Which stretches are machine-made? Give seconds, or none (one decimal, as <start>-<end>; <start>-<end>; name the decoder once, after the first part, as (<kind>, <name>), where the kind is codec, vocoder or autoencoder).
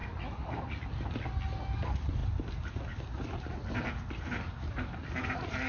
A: none